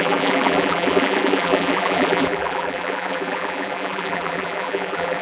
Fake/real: fake